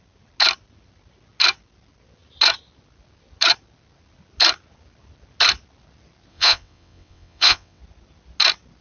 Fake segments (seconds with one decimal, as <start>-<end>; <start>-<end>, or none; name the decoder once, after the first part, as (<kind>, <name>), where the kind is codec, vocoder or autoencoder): 6.3-7.8 (vocoder, WaveNeXt)

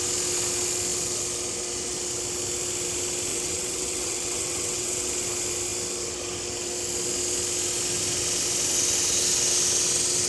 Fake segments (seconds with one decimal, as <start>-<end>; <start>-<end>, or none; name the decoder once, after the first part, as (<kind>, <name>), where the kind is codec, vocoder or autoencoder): 3.3-5.1 (vocoder, WaveNeXt)

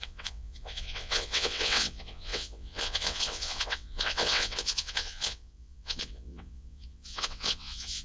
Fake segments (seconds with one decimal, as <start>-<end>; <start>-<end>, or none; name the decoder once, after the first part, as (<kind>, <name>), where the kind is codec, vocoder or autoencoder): 0.0-8.0 (vocoder, WaveNeXt)

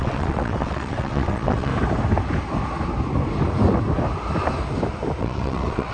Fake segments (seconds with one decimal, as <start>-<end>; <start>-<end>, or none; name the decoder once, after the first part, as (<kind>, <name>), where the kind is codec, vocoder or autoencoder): 0.0-1.7 (vocoder, WaveNeXt); 5.2-5.9

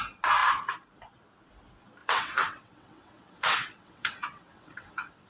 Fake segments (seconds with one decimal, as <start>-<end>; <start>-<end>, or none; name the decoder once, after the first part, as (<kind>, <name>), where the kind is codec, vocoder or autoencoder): 2.0-5.3 (vocoder, WaveNeXt)

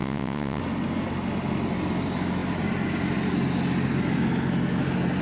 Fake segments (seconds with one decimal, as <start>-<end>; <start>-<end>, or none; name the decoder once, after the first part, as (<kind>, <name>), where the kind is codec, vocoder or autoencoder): 0.0-0.6 (vocoder, WaveNeXt)

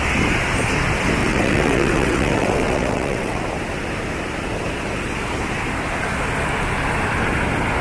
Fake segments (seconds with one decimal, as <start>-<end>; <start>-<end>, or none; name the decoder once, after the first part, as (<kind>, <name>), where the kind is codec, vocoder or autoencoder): 1.2-3.4 (vocoder, WaveNeXt)